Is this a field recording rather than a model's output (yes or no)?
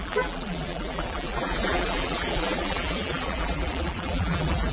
no